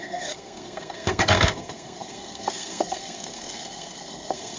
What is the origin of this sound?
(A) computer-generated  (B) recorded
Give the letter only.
A